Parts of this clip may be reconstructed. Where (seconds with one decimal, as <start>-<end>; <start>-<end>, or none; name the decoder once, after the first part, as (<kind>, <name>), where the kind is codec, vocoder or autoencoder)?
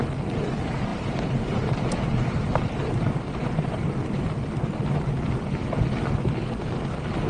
0.9-4.2 (vocoder, BigVGAN v2)